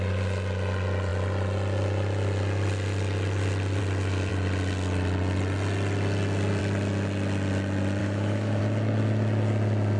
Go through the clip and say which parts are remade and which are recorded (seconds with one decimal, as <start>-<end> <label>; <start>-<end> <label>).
0.0-8.0 recorded; 8.0-8.6 remade; 8.6-10.0 recorded